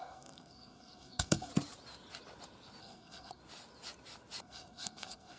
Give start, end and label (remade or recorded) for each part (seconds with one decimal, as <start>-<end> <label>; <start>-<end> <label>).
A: 0.0-1.5 remade; 1.5-2.8 recorded; 2.8-3.4 remade; 3.4-4.4 recorded; 4.4-5.4 remade